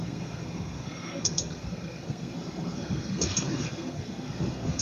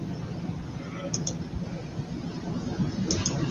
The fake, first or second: first